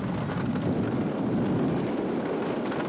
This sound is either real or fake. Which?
real